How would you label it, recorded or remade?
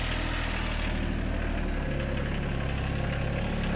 recorded